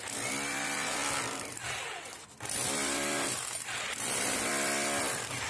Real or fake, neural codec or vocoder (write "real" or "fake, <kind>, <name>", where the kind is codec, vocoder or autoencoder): real